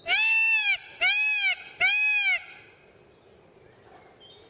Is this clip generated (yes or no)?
no